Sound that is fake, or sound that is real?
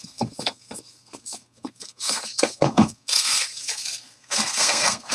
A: fake